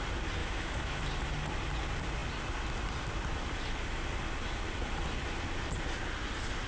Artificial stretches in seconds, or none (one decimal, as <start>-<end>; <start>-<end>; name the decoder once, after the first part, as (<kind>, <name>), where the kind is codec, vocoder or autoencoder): 0.4-1.0 (autoencoder, DAC-VAE)